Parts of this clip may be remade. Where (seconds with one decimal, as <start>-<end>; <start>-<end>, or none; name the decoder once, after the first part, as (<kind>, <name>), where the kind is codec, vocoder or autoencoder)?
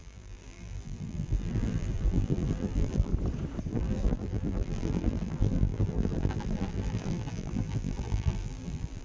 0.0-3.1 (vocoder, BigVGAN v2); 3.7-9.0